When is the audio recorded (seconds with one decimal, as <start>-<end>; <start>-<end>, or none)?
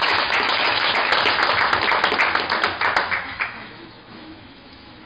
1.1-3.2